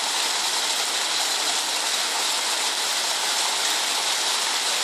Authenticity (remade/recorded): recorded